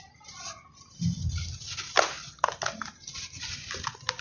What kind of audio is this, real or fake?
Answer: real